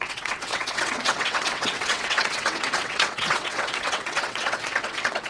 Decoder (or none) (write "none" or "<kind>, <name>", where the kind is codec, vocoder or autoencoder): vocoder, WaveNeXt